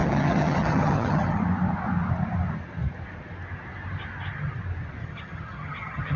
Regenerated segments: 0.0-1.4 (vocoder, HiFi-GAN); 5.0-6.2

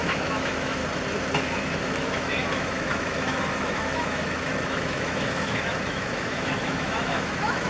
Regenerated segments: 0.0-0.8 (autoencoder, DAC-VAE); 1.4-7.7

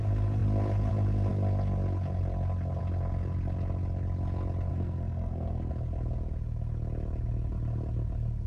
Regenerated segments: 4.7-5.7 (codec, SNAC)

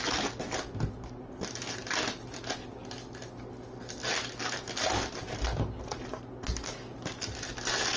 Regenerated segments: none